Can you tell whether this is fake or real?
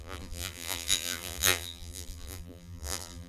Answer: fake